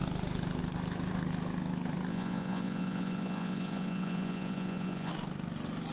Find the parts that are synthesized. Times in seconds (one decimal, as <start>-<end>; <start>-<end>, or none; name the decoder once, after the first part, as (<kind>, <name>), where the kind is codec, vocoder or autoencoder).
2.1-5.1 (vocoder, Vocos)

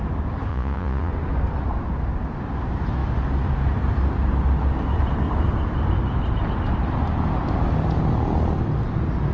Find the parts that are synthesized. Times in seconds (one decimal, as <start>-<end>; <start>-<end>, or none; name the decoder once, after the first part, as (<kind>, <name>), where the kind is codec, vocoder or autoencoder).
0.5-1.1 (vocoder, Vocos)